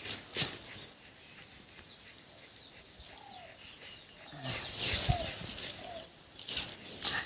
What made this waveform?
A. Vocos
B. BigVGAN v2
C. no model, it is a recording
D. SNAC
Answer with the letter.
C